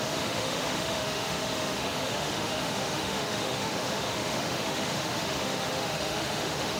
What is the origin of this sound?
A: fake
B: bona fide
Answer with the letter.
A